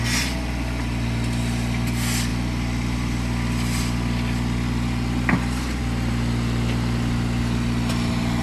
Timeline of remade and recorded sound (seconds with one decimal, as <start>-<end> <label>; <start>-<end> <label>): 0.0-8.4 recorded